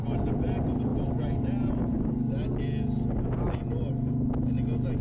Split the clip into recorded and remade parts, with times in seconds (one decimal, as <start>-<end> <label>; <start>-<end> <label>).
0.0-5.0 recorded